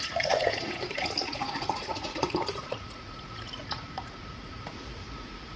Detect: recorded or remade remade